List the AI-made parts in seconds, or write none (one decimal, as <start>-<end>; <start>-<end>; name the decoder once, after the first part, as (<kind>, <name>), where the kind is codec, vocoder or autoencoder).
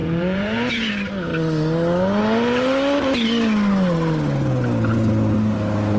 0.0-0.9 (vocoder, Vocos)